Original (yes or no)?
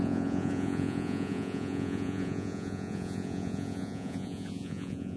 no